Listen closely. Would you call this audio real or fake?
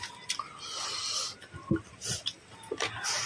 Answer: real